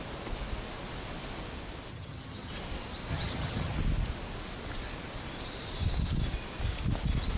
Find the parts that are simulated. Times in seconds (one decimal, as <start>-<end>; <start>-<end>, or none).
1.9-2.5; 3.1-3.8